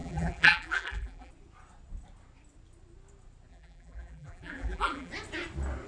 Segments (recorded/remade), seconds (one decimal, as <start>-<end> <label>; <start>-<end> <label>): 0.0-1.3 remade; 1.3-3.5 recorded; 3.5-5.1 remade; 5.1-5.9 recorded

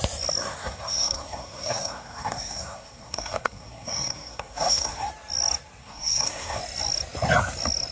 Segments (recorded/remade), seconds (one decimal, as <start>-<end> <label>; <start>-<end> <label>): 0.0-0.4 recorded; 0.4-5.1 remade; 5.1-5.8 recorded; 5.8-6.6 remade; 6.6-7.9 recorded

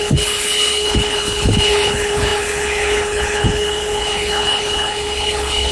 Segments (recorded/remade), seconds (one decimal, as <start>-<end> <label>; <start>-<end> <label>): 0.0-5.7 remade

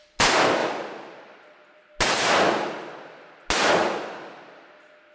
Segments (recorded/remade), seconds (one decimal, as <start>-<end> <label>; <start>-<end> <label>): 0.0-5.1 recorded

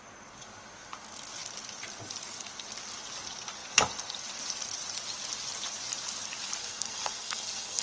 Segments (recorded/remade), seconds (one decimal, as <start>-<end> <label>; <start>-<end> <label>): 0.0-6.6 recorded; 6.6-7.8 remade

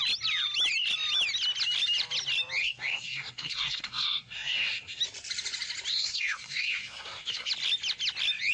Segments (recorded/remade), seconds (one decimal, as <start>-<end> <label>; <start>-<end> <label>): 0.0-2.6 recorded; 2.6-5.0 remade; 5.0-5.9 recorded; 5.9-7.5 remade; 7.5-8.5 recorded

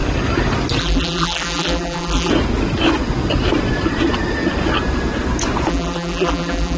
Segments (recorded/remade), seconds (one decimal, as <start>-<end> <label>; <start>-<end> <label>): 0.0-0.8 recorded; 0.8-2.3 remade; 2.3-5.7 recorded; 5.7-6.8 remade